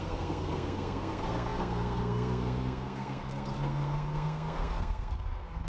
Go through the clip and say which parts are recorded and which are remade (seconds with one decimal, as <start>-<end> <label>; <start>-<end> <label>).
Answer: 0.0-5.7 remade